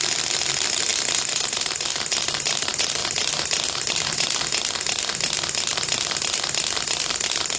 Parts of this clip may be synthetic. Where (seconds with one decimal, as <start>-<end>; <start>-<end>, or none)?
none